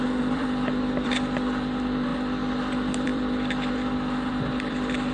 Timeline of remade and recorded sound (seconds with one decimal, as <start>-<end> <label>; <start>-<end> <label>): 0.0-2.1 remade; 2.1-2.7 recorded; 2.7-5.1 remade